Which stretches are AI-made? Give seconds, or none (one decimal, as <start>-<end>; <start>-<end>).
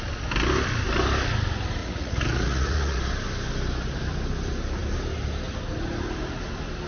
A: 1.8-3.0